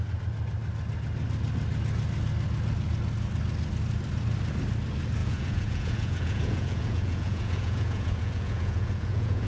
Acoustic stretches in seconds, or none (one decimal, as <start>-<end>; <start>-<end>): 0.0-5.2